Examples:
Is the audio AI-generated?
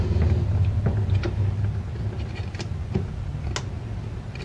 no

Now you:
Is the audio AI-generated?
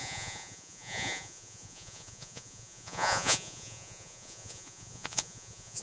yes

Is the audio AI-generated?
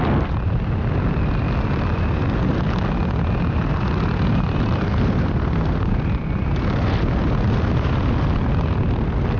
no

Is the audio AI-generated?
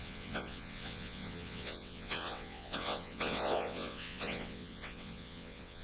yes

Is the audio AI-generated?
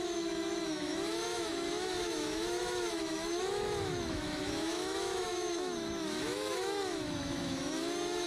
yes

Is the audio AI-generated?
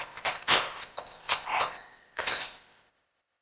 yes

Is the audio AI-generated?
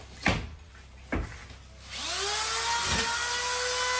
no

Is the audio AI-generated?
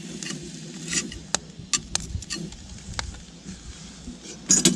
no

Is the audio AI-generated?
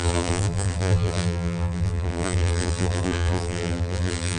yes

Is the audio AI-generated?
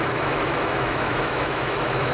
yes